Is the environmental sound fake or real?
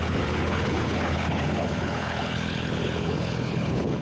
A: fake